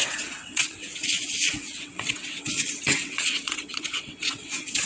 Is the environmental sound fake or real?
fake